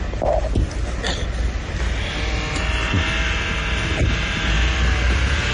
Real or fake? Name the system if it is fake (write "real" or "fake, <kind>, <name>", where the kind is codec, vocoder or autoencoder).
real